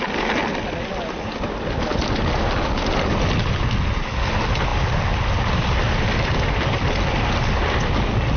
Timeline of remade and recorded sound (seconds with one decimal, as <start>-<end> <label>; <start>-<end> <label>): 0.0-8.4 recorded